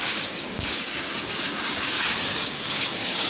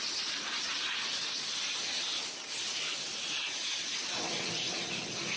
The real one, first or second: second